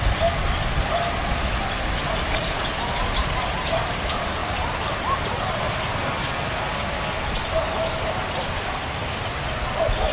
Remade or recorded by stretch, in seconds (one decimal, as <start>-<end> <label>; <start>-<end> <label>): 0.0-4.4 recorded; 4.4-5.8 remade; 5.8-10.1 recorded